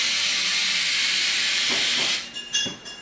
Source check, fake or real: real